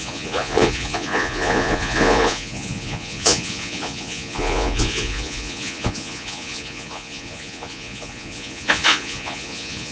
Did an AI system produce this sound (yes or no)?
yes